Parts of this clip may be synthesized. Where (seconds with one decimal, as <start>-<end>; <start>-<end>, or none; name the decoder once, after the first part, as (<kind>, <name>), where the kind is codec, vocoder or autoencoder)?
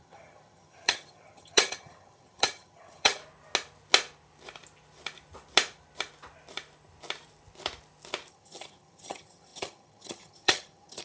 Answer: 0.0-3.2 (vocoder, HiFi-GAN); 8.3-11.0